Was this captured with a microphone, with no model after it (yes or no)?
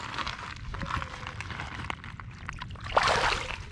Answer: yes